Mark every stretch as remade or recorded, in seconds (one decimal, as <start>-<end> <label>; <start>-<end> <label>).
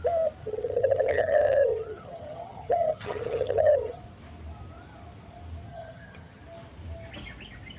0.0-0.4 recorded; 0.4-4.0 remade; 4.0-5.7 recorded; 5.7-6.4 remade; 6.4-7.8 recorded